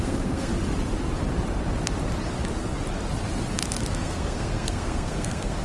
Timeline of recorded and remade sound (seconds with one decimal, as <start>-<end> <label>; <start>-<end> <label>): 0.0-0.5 remade; 0.5-3.9 recorded; 3.9-5.6 remade